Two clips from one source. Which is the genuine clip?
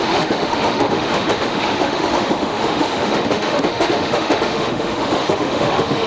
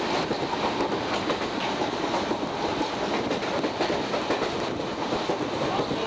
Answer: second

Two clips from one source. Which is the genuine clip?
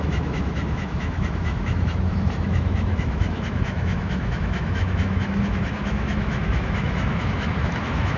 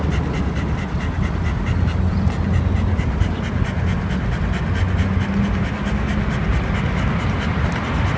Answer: second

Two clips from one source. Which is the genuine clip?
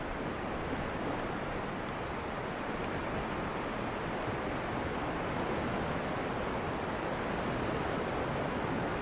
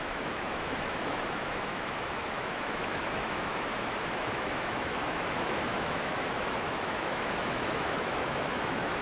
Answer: first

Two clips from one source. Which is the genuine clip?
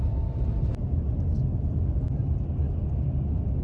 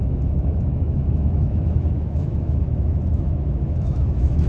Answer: first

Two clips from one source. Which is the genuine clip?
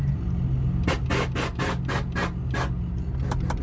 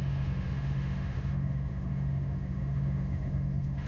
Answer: first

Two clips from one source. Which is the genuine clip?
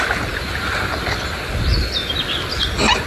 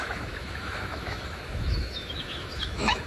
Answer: first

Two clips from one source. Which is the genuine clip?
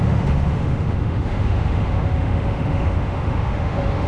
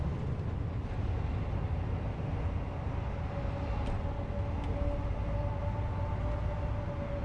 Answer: second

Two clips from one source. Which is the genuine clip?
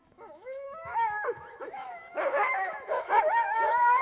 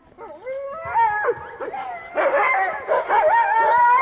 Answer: second